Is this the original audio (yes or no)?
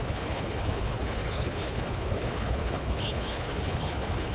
no